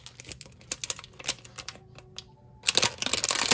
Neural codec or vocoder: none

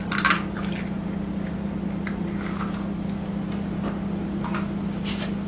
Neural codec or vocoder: none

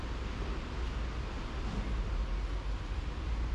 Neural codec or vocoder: none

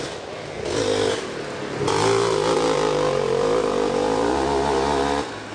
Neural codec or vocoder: none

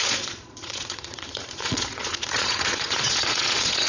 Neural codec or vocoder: vocoder, Vocos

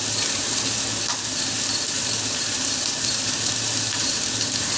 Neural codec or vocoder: vocoder, BigVGAN v2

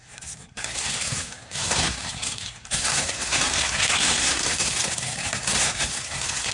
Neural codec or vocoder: codec, SNAC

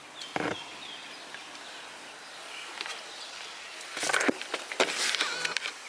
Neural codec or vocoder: none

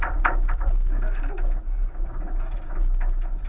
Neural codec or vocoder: none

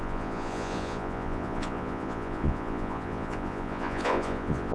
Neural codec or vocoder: vocoder, Vocos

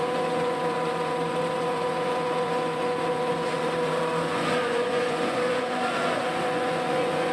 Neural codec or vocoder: vocoder, Vocos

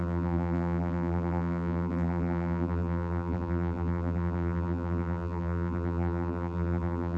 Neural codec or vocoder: vocoder, BigVGAN v2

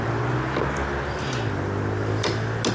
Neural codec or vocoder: none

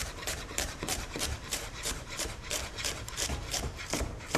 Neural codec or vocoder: vocoder, BigVGAN v2